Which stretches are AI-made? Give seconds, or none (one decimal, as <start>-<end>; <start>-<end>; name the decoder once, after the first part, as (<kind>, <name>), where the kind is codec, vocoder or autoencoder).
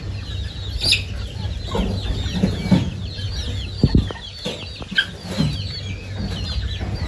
none